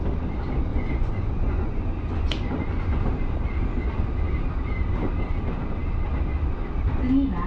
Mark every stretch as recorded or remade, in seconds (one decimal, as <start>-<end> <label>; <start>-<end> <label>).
0.0-0.7 recorded; 0.7-3.0 remade; 3.0-7.5 recorded